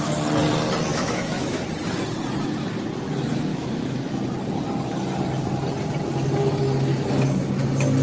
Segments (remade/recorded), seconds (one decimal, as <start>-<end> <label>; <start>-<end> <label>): 0.0-0.9 recorded; 0.9-1.6 remade; 1.6-3.5 recorded; 3.5-4.1 remade; 4.1-8.0 recorded